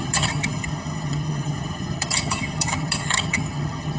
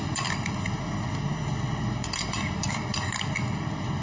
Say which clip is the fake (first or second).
first